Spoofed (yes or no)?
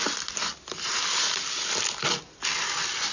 no